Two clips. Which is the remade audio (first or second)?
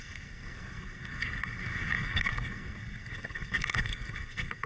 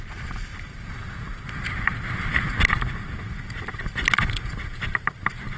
first